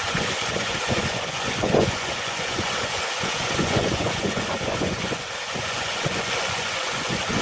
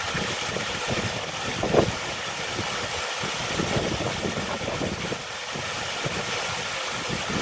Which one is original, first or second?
second